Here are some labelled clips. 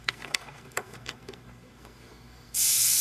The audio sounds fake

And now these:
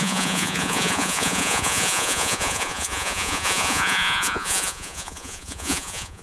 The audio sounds fake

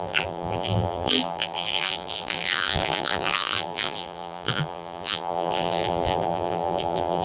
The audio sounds fake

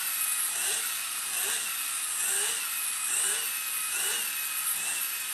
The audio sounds real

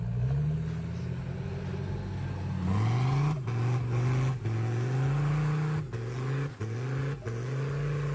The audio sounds real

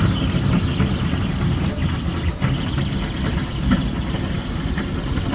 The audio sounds real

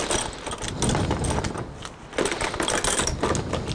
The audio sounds real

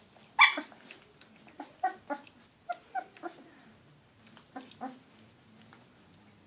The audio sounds real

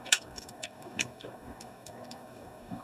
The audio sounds fake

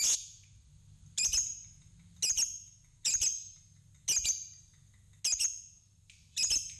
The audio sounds real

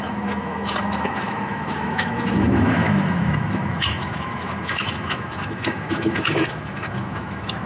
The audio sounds fake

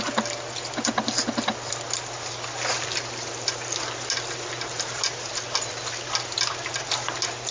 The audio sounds real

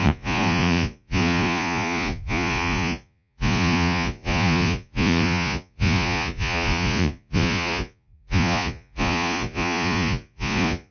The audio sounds fake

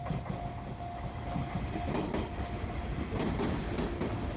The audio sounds real